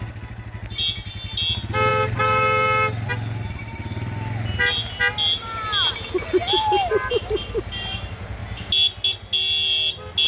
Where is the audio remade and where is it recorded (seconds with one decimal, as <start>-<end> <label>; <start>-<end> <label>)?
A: 0.0-1.9 recorded; 1.9-3.1 remade; 3.1-10.3 recorded